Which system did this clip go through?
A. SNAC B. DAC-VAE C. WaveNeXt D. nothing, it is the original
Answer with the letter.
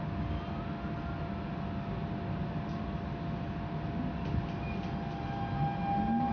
D